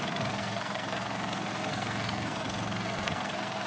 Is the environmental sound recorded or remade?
remade